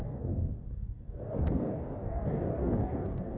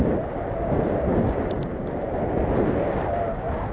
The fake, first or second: first